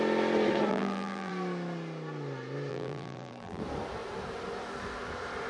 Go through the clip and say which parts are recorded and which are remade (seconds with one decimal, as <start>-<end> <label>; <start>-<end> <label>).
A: 0.0-0.7 recorded; 0.7-1.3 remade; 1.3-2.7 recorded; 2.7-3.6 remade; 3.6-5.5 recorded